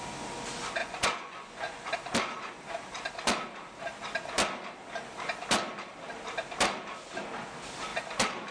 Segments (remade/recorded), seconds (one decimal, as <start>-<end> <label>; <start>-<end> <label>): 0.0-0.8 recorded; 0.8-1.9 remade; 1.9-8.5 recorded